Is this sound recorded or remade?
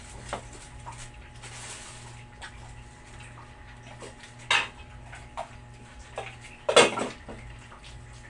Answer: recorded